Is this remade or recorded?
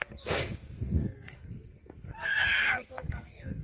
remade